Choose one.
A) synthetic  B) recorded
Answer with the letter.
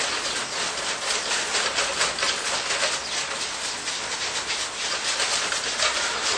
B